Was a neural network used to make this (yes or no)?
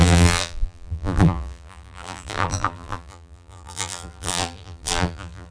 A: yes